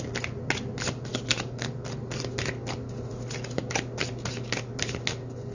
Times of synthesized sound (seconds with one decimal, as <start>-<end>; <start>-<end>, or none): none